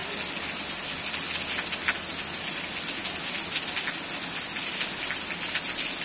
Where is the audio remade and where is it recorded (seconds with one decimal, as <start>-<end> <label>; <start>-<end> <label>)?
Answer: 0.0-6.0 recorded